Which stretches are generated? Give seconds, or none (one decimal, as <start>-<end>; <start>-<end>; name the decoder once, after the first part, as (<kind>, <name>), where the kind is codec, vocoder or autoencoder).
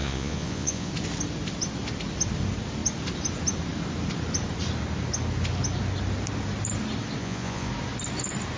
0.0-0.9 (vocoder, Vocos); 7.2-7.7